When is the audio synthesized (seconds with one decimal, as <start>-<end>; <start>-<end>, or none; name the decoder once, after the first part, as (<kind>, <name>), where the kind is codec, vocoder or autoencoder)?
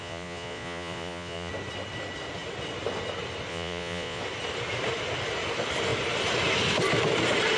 0.0-1.5 (vocoder, Vocos); 3.5-4.2